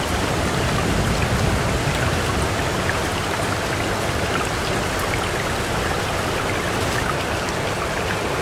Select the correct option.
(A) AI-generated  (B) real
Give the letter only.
B